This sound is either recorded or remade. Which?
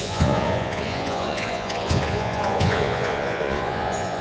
remade